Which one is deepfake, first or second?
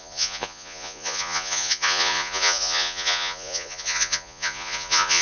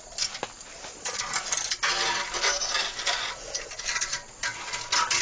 first